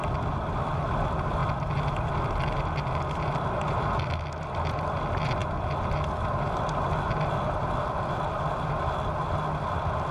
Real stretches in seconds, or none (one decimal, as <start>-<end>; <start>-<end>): 0.0-10.1